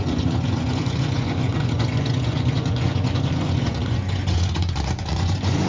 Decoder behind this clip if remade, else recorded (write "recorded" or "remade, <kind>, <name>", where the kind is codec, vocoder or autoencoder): remade, vocoder, Vocos